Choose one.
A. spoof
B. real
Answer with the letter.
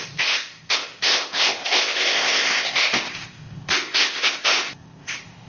A